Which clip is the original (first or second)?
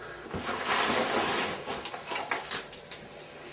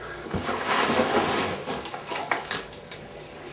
first